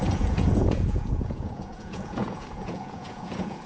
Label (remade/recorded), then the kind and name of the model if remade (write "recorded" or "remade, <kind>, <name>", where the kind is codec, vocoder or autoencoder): remade, vocoder, Vocos